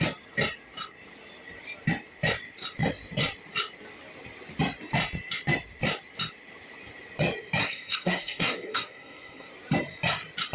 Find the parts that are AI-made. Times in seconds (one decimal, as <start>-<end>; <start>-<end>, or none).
7.6-9.5